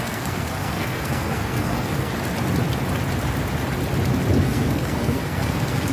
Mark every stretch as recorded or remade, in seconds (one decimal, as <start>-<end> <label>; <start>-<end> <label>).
0.0-2.1 remade; 2.1-4.4 recorded; 4.4-5.9 remade